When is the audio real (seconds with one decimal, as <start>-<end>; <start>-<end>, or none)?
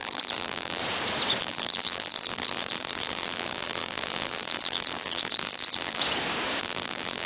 0.8-1.4; 6.0-6.6